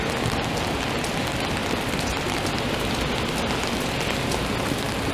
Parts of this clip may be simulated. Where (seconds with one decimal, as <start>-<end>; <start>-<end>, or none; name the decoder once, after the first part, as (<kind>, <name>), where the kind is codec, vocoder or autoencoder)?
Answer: none